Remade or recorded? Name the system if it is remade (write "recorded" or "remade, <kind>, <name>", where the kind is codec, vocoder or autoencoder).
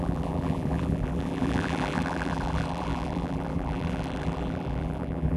remade, vocoder, BigVGAN v2